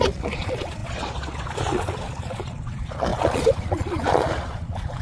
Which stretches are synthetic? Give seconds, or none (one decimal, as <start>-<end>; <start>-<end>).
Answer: 0.0-5.0